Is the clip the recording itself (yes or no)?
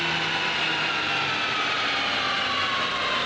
yes